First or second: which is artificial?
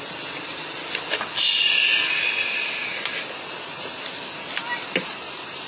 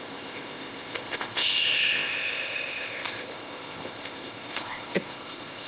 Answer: second